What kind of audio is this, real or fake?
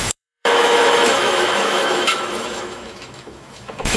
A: fake